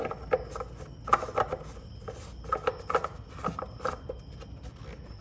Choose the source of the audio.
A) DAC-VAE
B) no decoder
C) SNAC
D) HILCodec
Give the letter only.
B